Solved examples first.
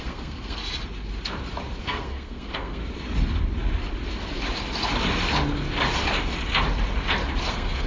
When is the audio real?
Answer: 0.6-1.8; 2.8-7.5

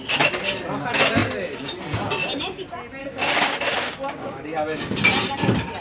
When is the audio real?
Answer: 0.0-3.0; 5.0-5.8

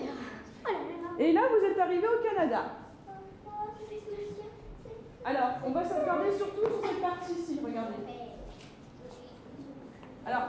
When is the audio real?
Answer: 0.0-1.7; 4.4-10.5

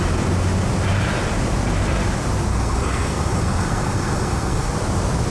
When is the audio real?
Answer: 0.0-2.5; 4.7-5.3

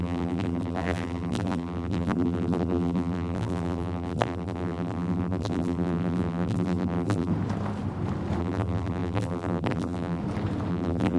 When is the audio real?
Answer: 7.3-8.4; 10.2-10.7